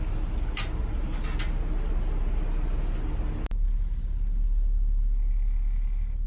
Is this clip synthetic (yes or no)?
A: no